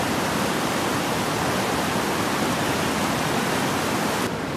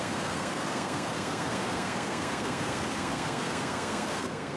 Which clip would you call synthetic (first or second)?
second